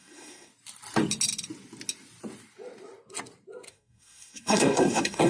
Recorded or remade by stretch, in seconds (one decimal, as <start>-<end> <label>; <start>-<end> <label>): 0.0-0.5 remade; 0.5-3.7 recorded; 3.7-5.3 remade